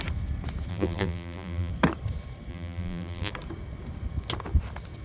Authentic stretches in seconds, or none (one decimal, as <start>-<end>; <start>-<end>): 0.0-0.7; 1.7-2.5; 3.3-5.0